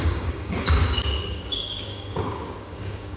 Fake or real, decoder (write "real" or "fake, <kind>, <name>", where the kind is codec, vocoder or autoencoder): fake, codec, DAC